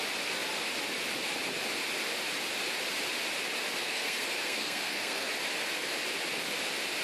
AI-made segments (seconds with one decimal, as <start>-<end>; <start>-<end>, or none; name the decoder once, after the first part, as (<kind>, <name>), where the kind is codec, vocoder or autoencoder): 3.8-5.3 (codec, SNAC)